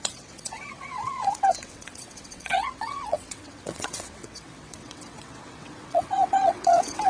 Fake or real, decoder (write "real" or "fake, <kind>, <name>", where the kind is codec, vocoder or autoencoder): fake, vocoder, WaveNeXt